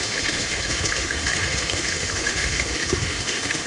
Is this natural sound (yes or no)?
no